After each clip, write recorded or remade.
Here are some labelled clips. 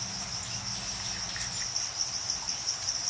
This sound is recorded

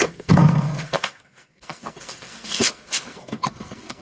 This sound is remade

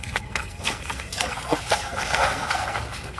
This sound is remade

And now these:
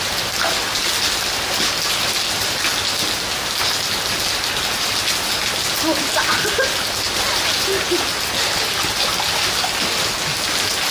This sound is recorded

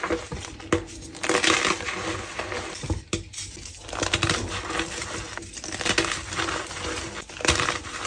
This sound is recorded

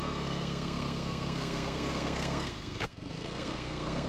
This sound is remade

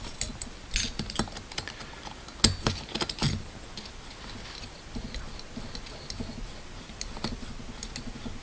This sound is recorded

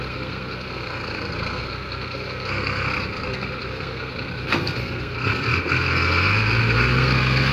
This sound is remade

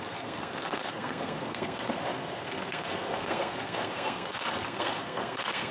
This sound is remade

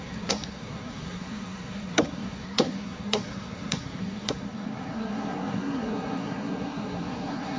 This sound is remade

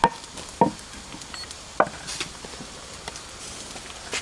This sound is recorded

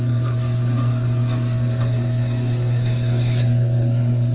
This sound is remade